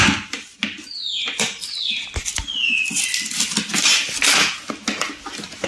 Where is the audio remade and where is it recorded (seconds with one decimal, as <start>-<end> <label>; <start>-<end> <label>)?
0.0-5.7 recorded